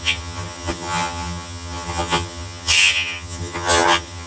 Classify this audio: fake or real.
fake